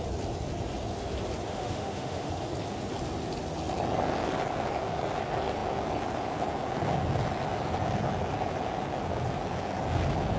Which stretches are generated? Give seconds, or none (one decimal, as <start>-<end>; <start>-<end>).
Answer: 1.5-2.3